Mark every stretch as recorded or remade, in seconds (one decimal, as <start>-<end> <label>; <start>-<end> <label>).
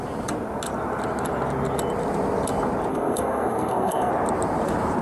0.0-2.9 recorded; 2.9-4.1 remade; 4.1-5.0 recorded